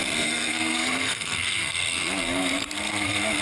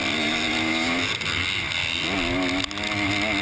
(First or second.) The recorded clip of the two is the second